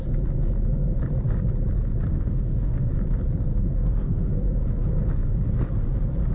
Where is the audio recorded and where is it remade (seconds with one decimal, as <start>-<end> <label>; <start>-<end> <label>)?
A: 0.0-2.1 recorded; 2.1-2.9 remade; 2.9-3.5 recorded; 3.5-4.4 remade; 4.4-6.3 recorded